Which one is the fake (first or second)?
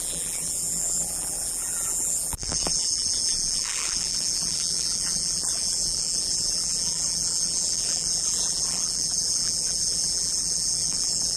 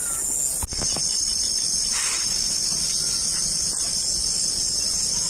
first